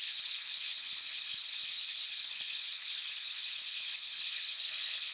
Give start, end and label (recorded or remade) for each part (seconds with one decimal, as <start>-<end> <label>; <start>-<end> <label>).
0.0-5.1 remade